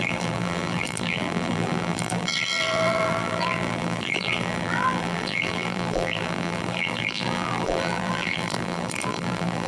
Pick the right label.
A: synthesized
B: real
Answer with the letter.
A